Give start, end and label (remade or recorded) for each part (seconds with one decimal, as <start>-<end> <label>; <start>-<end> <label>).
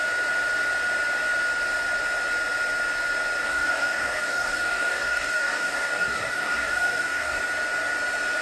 0.0-3.4 recorded; 3.4-7.4 remade; 7.4-8.4 recorded